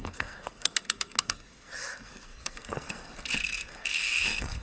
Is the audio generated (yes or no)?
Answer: yes